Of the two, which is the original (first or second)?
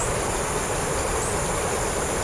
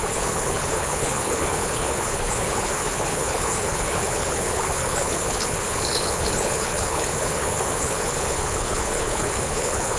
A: first